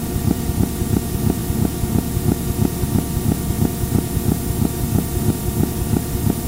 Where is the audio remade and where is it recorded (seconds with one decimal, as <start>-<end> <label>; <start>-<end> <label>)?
0.0-0.6 remade; 0.6-6.5 recorded